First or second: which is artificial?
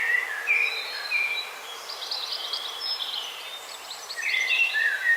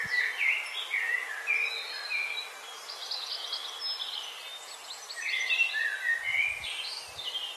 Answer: first